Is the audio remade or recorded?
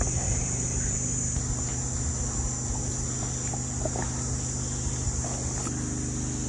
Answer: recorded